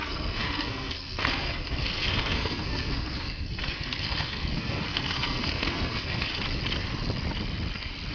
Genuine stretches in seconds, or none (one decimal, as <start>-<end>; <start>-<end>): 6.3-8.1